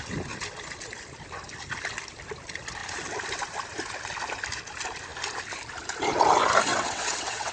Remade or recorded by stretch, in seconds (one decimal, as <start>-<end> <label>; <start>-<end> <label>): 0.0-6.7 recorded; 6.7-7.5 remade